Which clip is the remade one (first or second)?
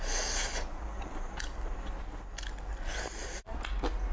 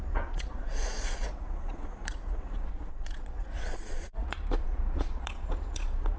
second